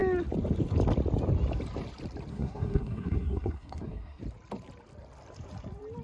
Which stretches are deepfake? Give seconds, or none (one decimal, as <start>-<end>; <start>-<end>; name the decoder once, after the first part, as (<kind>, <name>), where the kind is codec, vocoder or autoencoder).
2.3-4.2 (codec, SNAC)